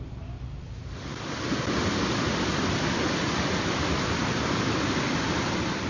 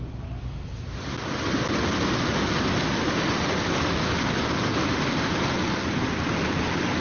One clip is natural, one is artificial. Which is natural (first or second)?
second